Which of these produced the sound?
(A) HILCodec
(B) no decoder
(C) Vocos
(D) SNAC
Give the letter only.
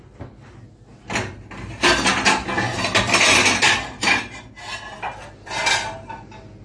B